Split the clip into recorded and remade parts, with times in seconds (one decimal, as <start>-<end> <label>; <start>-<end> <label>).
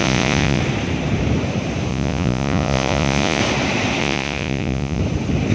0.0-0.6 remade; 0.6-1.9 recorded; 1.9-3.4 remade; 3.4-4.0 recorded; 4.0-5.0 remade; 5.0-5.5 recorded